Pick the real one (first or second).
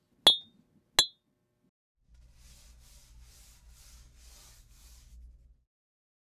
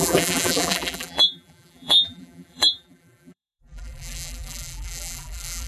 first